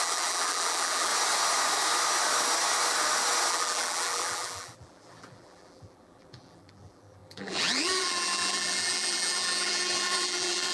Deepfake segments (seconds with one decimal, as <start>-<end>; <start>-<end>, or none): 0.0-1.1; 3.5-10.7